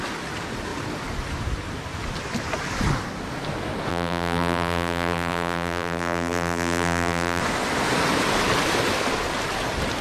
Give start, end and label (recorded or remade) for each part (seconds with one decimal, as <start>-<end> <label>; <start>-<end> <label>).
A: 0.0-3.9 recorded; 3.9-7.4 remade; 7.4-10.0 recorded